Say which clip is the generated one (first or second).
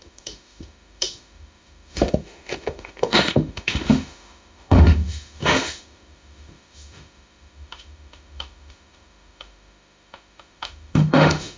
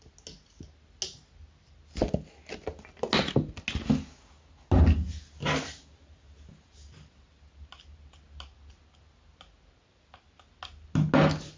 first